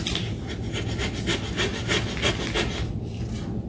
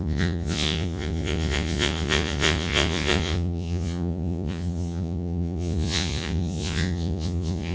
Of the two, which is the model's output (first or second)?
second